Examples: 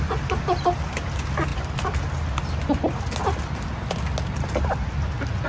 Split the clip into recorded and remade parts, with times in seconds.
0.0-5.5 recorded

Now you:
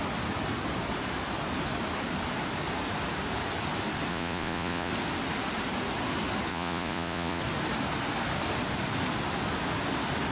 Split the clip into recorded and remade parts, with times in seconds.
0.0-4.1 recorded; 4.1-4.9 remade; 4.9-6.5 recorded; 6.5-7.4 remade; 7.4-10.3 recorded

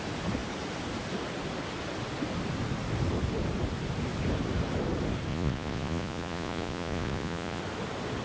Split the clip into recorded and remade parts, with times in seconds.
0.0-5.3 recorded; 5.3-7.6 remade; 7.6-8.2 recorded